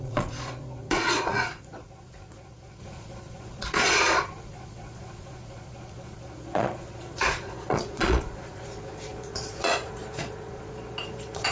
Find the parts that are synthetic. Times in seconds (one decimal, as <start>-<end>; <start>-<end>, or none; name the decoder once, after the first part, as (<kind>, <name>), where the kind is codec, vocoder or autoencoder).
0.0-11.5 (vocoder, Vocos)